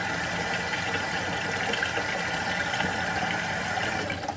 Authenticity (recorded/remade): recorded